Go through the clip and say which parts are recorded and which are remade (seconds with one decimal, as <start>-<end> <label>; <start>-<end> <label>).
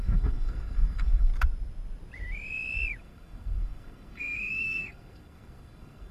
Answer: 0.0-1.3 remade; 1.3-3.0 recorded; 3.0-6.1 remade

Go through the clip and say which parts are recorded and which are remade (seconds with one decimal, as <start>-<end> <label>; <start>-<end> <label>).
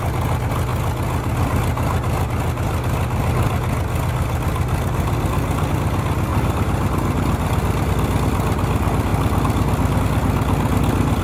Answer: 0.0-6.3 recorded; 6.3-7.9 remade; 7.9-11.2 recorded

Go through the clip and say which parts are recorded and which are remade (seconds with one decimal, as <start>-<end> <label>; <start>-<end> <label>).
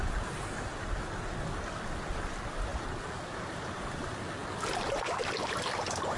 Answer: 0.0-6.2 recorded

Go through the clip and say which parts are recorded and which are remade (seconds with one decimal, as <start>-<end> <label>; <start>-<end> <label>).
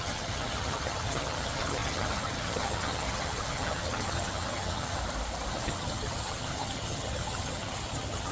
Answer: 0.0-5.0 remade; 5.0-5.5 recorded; 5.5-8.3 remade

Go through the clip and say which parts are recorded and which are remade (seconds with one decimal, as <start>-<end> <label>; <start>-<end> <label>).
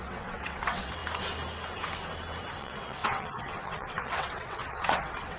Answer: 0.0-1.0 remade; 1.0-2.6 recorded; 2.6-5.4 remade